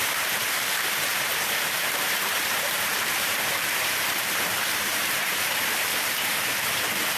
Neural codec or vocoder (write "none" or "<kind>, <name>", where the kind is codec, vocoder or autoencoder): vocoder, BigVGAN v2